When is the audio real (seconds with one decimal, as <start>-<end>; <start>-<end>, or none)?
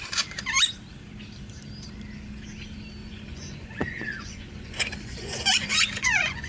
0.0-3.0